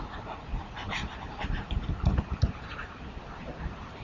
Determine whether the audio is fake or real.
real